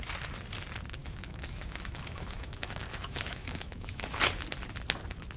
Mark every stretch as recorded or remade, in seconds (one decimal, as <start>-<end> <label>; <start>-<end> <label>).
0.0-1.0 recorded; 1.0-4.2 remade; 4.2-5.4 recorded